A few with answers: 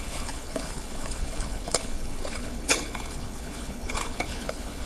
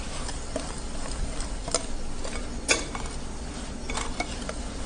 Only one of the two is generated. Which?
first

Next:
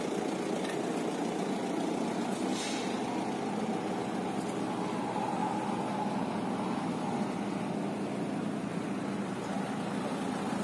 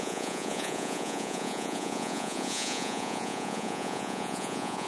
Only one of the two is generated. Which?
second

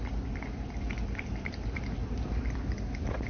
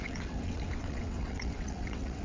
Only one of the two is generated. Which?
second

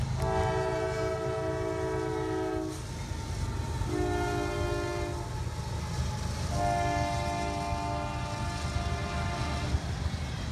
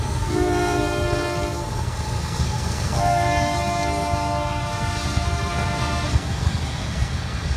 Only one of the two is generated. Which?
second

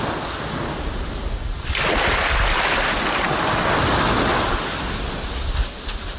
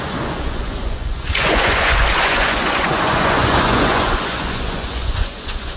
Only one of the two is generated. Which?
second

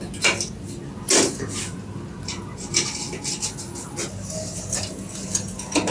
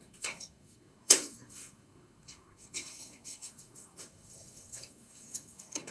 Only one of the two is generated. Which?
second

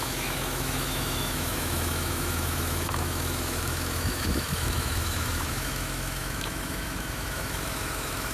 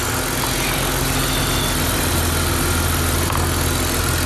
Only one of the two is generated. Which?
first